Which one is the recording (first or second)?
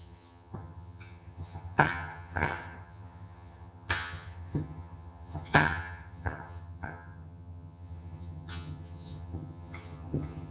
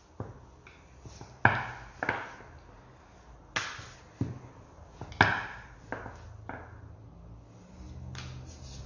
second